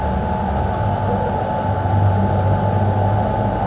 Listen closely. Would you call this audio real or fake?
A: real